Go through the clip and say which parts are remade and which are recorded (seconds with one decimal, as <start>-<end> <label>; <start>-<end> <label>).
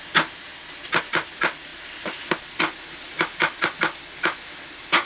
0.0-5.1 recorded